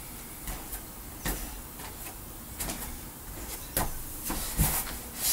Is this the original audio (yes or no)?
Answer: yes